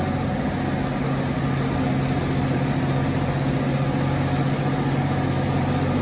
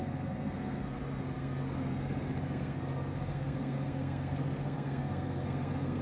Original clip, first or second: first